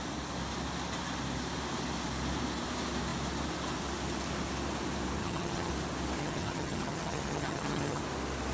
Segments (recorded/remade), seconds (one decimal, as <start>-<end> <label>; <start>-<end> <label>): 0.0-5.2 recorded; 5.2-5.7 remade; 5.7-6.2 recorded; 6.2-8.0 remade; 8.0-8.5 recorded